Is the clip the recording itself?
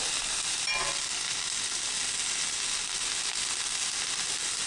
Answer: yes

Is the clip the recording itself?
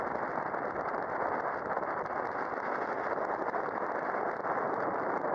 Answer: yes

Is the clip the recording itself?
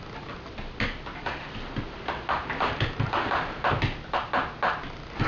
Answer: yes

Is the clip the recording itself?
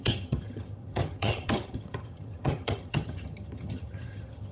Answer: no